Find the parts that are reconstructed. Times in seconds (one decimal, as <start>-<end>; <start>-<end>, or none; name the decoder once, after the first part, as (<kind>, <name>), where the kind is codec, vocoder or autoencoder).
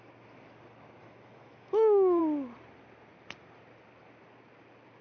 1.0-2.2 (autoencoder, DAC-VAE)